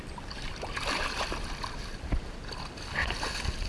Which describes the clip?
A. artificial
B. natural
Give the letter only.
B